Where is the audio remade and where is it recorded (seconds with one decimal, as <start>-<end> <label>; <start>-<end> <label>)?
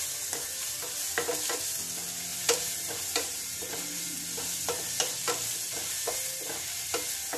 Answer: 0.0-2.3 recorded; 2.3-4.0 remade; 4.0-7.4 recorded